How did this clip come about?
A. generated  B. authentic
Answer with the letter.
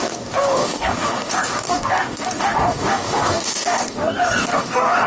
A